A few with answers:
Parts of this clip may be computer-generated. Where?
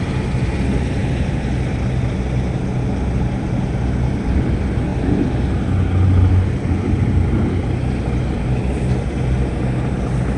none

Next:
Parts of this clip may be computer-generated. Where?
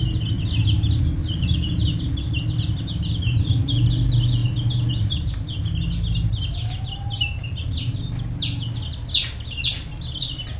1.2-2.0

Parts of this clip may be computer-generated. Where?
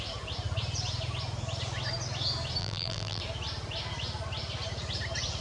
2.6-3.2